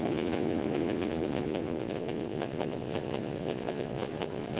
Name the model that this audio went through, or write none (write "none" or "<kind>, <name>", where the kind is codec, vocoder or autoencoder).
vocoder, Vocos